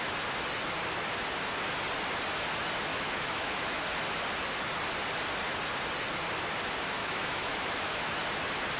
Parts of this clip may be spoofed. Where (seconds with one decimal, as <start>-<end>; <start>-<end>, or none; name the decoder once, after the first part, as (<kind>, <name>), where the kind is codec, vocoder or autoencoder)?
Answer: 2.9-3.8 (autoencoder, DAC-VAE); 7.0-8.1